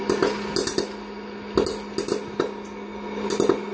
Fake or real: real